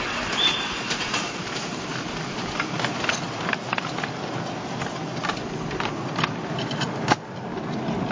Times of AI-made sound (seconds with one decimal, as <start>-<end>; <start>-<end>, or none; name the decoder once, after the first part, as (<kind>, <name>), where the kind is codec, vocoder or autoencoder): 0.0-1.9 (vocoder, BigVGAN v2); 3.5-4.2